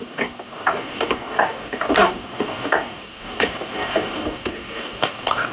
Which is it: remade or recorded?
remade